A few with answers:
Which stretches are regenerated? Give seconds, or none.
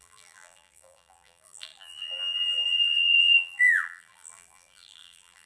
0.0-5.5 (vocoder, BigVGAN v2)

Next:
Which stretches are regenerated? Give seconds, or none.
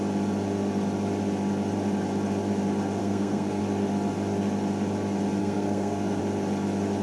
3.0-3.6 (codec, SNAC); 5.4-6.2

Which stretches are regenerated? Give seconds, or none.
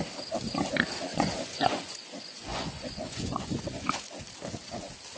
1.1-4.2 (vocoder, Vocos)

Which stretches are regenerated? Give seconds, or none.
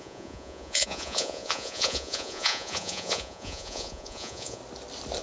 0.0-4.6 (vocoder, Vocos)